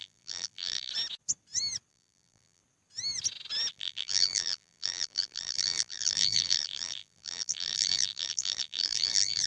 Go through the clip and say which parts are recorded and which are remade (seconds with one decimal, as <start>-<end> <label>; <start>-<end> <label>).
0.0-0.9 remade; 0.9-1.9 recorded; 1.9-2.6 remade; 2.6-3.7 recorded; 3.7-9.5 remade